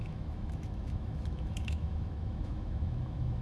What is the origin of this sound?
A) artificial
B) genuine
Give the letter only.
A